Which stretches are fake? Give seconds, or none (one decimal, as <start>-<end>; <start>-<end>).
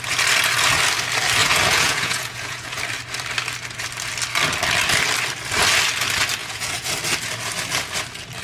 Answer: 1.4-2.8; 6.4-6.9